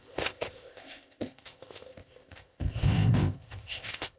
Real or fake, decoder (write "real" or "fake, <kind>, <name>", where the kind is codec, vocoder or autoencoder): fake, codec, ZipCodec